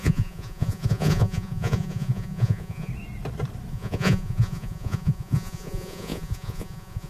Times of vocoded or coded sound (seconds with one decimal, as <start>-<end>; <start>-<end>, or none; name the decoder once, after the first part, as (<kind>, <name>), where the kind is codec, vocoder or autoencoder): 0.0-2.9 (vocoder, Vocos); 3.7-7.1